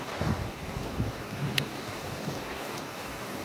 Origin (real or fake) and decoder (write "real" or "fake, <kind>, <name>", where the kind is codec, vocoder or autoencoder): fake, codec, DAC